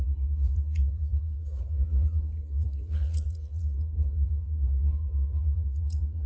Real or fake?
fake